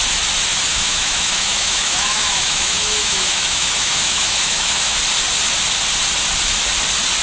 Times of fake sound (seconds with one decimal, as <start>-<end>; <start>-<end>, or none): 0.7-5.0